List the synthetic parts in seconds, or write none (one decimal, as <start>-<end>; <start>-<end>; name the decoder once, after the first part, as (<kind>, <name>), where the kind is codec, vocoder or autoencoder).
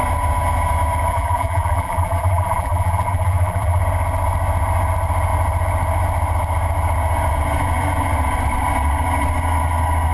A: 1.1-3.8 (vocoder, BigVGAN v2)